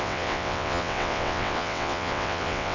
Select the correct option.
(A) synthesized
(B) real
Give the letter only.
A